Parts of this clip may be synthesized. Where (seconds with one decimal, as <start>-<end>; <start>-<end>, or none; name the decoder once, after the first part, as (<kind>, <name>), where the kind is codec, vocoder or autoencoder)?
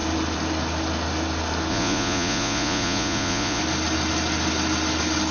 1.7-3.6 (vocoder, Vocos)